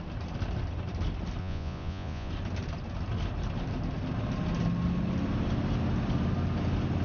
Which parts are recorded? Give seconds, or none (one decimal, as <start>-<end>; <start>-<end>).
0.0-1.4; 2.3-7.0

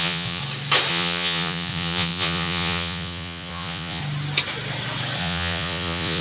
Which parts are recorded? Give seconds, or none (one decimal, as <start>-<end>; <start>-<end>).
0.4-0.9; 4.0-5.2